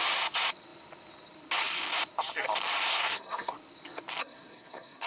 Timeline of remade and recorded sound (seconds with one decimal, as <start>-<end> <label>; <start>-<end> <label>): 0.0-2.9 recorded; 2.9-3.5 remade; 3.5-4.2 recorded; 4.2-5.1 remade